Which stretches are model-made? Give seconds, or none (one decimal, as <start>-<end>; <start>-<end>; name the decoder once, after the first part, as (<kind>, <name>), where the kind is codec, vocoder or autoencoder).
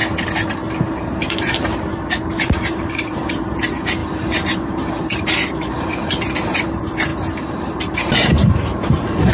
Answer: 0.9-9.3 (vocoder, BigVGAN v2)